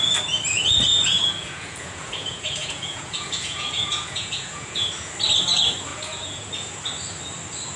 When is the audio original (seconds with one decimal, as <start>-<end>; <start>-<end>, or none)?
0.0-0.9; 5.1-5.9; 6.8-7.8